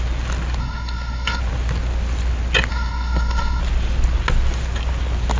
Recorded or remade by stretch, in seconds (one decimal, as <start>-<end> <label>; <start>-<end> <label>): 0.0-0.6 recorded; 0.6-1.4 remade; 1.4-2.7 recorded; 2.7-3.6 remade; 3.6-5.4 recorded